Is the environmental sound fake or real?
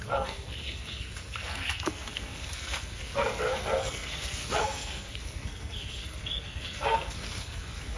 fake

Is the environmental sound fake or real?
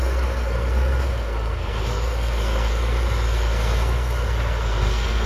fake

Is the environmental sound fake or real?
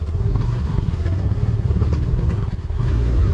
fake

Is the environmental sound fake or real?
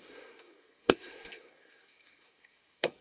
fake